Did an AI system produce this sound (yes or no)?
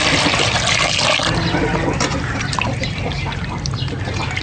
no